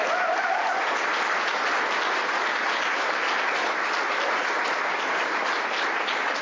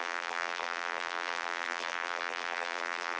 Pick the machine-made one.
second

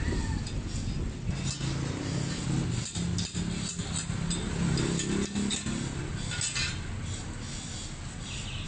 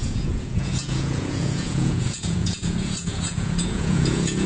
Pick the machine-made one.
second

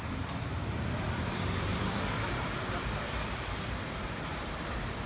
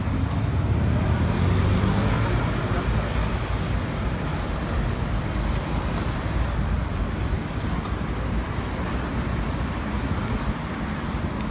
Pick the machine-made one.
first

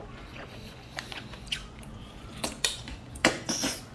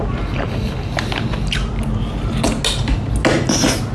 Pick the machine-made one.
first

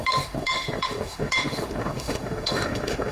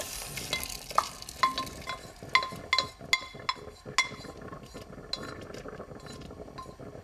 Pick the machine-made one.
first